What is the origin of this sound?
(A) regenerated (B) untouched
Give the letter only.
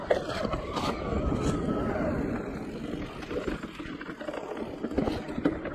B